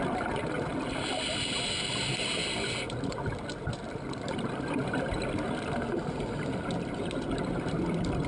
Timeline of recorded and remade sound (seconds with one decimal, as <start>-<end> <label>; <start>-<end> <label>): 0.0-8.3 recorded

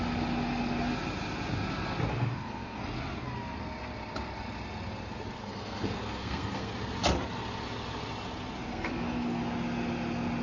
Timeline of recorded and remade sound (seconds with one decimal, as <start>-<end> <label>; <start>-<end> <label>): 0.0-2.1 recorded; 2.1-2.8 remade; 2.8-5.4 recorded; 5.4-6.7 remade; 6.7-8.7 recorded; 8.7-9.4 remade; 9.4-10.4 recorded

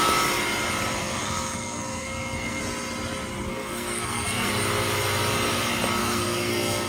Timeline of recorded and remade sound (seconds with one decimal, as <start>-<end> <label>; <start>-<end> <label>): 0.0-1.0 recorded; 1.0-2.6 remade; 2.6-3.5 recorded; 3.5-4.5 remade; 4.5-6.0 recorded; 6.0-6.9 remade

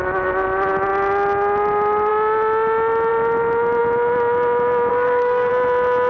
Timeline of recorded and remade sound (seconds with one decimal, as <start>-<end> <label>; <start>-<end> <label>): 0.0-4.9 recorded; 4.9-5.5 remade; 5.5-6.1 recorded

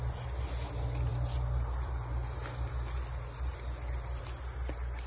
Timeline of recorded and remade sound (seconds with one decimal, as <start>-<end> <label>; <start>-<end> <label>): 0.0-5.1 recorded

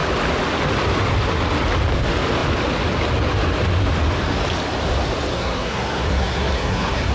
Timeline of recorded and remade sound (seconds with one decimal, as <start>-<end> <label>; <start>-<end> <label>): 0.0-5.3 recorded; 5.3-7.1 remade

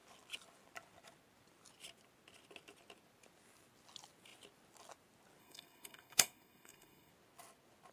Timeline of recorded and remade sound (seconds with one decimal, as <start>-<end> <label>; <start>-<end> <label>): 0.0-5.4 recorded; 5.4-7.1 remade; 7.1-7.9 recorded